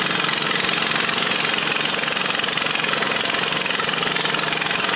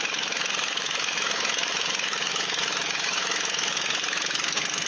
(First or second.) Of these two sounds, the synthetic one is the second